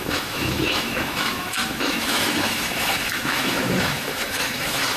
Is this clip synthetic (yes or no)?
yes